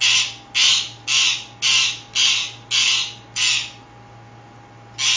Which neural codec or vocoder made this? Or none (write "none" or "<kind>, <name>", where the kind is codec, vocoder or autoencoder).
none